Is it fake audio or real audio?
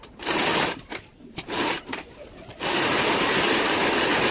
fake